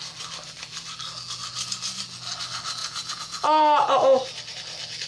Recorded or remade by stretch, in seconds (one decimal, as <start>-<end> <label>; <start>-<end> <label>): 0.0-2.8 recorded; 2.8-3.4 remade; 3.4-5.1 recorded